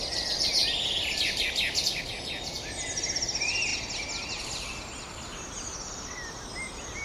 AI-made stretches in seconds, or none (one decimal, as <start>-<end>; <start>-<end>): none